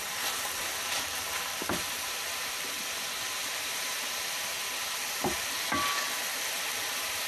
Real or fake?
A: real